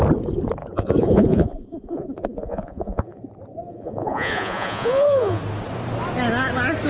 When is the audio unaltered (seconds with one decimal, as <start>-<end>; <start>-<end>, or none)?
0.0-0.6; 3.2-3.7; 5.4-6.9